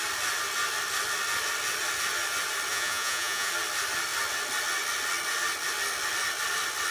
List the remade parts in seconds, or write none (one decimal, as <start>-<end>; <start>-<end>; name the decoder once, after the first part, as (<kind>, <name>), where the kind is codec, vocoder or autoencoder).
2.7-3.5 (vocoder, Vocos)